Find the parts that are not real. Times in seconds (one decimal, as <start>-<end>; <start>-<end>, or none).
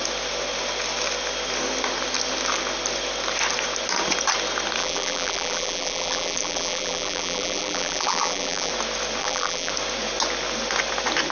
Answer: 4.8-8.7; 9.2-9.7